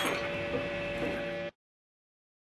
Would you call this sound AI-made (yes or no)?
no